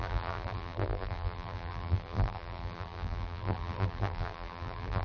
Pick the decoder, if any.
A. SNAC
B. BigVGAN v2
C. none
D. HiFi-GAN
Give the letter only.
B